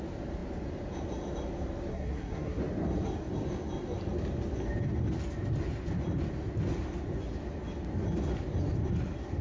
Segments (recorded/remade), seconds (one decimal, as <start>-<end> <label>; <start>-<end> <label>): 0.0-1.9 recorded; 1.9-2.6 remade; 2.6-9.4 recorded